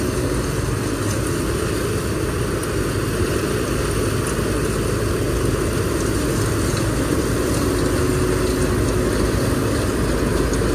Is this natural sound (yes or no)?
yes